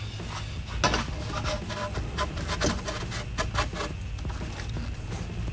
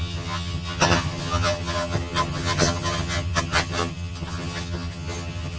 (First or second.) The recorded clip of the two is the first